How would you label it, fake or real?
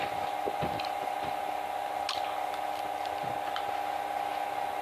real